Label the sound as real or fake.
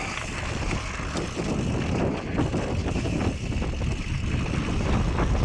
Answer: real